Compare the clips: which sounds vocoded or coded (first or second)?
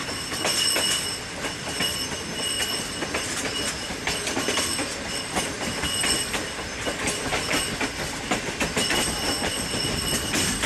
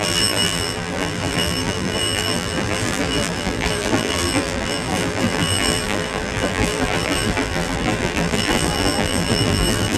second